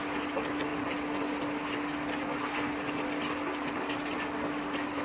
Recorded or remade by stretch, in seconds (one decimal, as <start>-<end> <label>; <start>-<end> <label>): 0.0-5.0 recorded